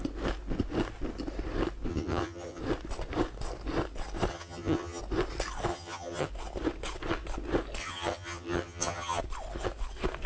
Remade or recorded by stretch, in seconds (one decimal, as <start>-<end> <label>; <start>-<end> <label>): 0.0-1.9 recorded; 1.9-2.6 remade; 2.6-4.3 recorded; 4.3-5.0 remade; 5.0-5.7 recorded; 5.7-6.3 remade; 6.3-7.8 recorded; 7.8-9.2 remade; 9.2-10.3 recorded